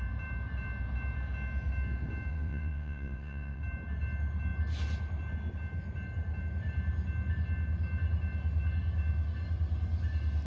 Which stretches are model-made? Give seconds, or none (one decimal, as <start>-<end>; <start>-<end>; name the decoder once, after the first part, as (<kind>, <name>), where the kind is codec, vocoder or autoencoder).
2.3-3.6 (vocoder, WaveNeXt)